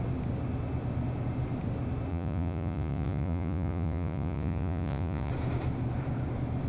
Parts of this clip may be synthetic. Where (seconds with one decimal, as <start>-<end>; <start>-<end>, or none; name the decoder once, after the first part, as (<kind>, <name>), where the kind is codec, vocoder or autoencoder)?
2.1-5.3 (vocoder, Vocos)